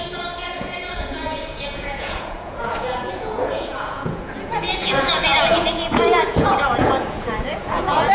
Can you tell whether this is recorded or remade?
remade